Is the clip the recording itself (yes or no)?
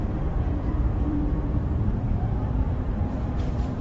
no